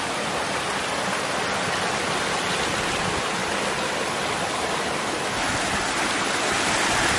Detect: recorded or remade recorded